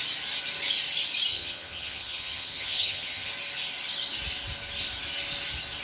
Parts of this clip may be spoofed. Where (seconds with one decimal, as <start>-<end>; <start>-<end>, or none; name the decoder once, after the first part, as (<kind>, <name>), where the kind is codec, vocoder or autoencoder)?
1.3-3.3 (vocoder, HiFi-GAN)